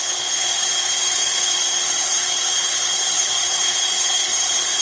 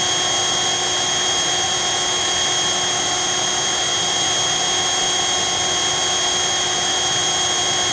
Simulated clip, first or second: first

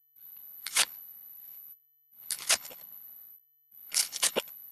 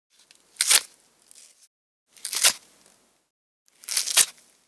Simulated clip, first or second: first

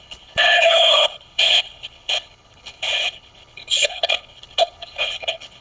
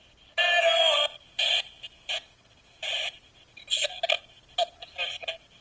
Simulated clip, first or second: first